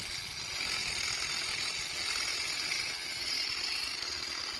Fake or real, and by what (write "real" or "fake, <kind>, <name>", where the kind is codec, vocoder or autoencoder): real